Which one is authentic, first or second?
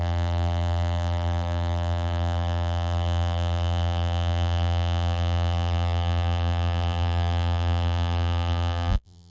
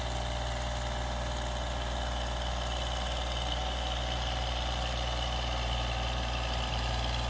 second